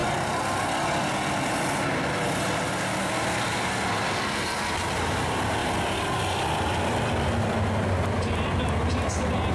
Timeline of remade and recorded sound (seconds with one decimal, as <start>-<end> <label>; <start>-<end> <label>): 0.0-9.5 recorded